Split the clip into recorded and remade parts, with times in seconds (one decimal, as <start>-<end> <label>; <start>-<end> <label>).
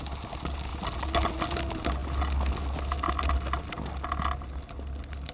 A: 0.0-5.3 recorded